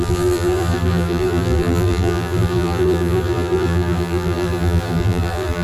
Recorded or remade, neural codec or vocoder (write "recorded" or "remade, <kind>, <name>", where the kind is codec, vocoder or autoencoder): remade, vocoder, BigVGAN v2